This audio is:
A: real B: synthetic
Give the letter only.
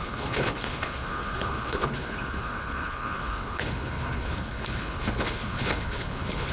B